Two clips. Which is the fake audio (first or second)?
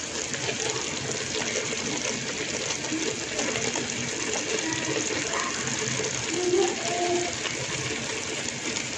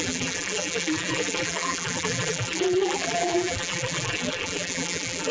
second